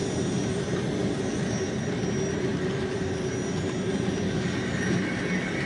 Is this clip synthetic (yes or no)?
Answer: no